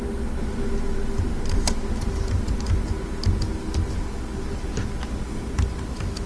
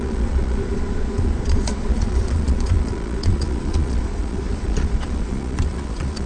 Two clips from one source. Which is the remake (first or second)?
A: second